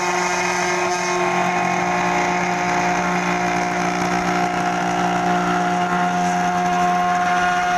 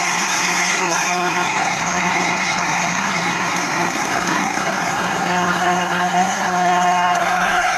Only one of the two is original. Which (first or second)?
first